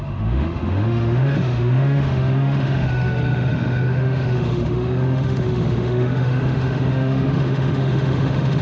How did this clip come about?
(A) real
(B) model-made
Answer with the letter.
B